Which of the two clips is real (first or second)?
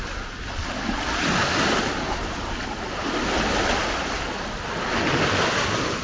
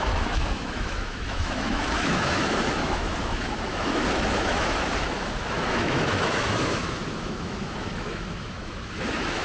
first